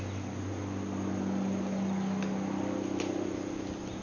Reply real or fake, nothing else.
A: real